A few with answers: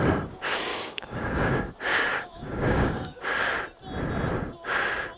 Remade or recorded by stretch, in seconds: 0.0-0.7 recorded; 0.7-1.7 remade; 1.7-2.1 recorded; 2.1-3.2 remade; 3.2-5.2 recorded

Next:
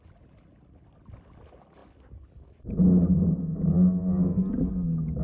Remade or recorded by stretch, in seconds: 0.0-5.2 recorded

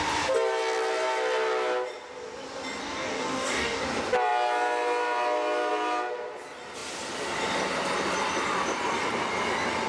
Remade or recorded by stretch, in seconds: 0.0-2.8 recorded; 2.8-3.8 remade; 3.8-9.9 recorded

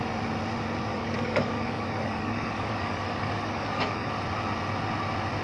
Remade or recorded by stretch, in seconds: 0.0-0.9 recorded; 0.9-4.1 remade; 4.1-5.4 recorded

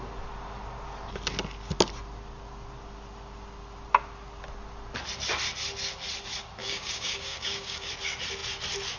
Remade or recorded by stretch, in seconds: 0.0-6.6 recorded; 6.6-7.9 remade; 7.9-9.0 recorded

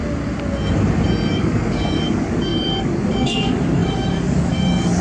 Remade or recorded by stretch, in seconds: 0.0-1.3 recorded; 1.3-5.0 remade

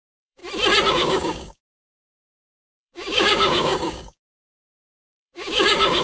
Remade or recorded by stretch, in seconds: 0.0-0.4 remade; 0.4-0.9 recorded; 0.9-6.0 remade

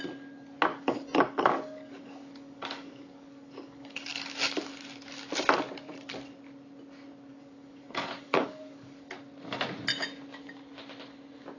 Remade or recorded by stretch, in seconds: 0.0-0.7 recorded; 0.7-4.7 remade; 4.7-7.3 recorded; 7.3-9.2 remade; 9.2-11.6 recorded